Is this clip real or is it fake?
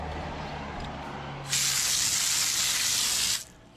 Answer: real